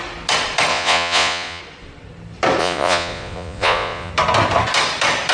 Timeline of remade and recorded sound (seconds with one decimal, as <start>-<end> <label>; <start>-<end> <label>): 0.0-0.7 recorded; 0.7-1.6 remade; 1.6-2.6 recorded; 2.6-4.1 remade; 4.1-5.3 recorded